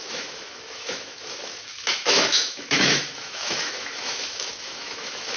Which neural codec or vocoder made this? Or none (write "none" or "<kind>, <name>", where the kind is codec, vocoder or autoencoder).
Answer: autoencoder, DAC-VAE